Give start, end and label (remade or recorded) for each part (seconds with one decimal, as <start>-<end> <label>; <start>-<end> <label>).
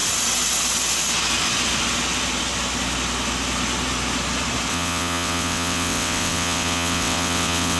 0.0-4.7 recorded; 4.7-7.8 remade